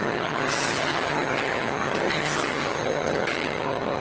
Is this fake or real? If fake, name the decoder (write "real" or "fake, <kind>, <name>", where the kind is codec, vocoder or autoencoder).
fake, vocoder, HiFi-GAN